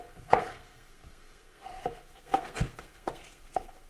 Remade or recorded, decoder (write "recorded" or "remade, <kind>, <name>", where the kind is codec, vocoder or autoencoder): remade, codec, SNAC